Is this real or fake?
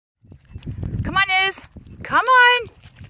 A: real